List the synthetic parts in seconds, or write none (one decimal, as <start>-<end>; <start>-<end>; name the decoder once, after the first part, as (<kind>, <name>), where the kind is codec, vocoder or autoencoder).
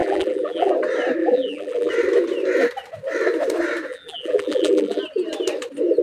0.0-0.7 (vocoder, BigVGAN v2); 1.2-1.9; 3.9-5.0